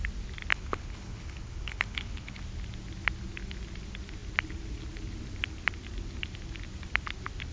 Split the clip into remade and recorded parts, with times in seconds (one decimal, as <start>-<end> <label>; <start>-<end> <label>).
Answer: 0.0-0.5 recorded; 0.5-2.4 remade; 2.4-7.5 recorded